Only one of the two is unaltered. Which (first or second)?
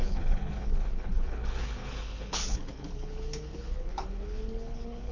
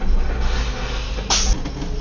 second